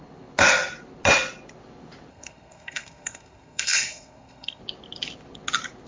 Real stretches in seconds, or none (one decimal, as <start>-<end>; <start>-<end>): 0.0-2.1; 4.6-5.9